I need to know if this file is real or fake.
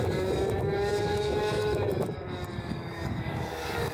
fake